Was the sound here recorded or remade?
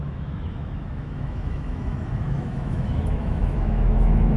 remade